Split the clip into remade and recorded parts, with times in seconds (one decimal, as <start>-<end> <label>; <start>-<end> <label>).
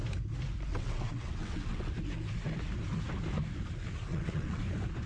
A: 0.0-0.7 recorded; 0.7-1.9 remade; 1.9-4.1 recorded; 4.1-4.6 remade; 4.6-5.1 recorded